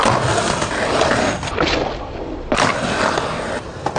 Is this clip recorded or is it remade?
recorded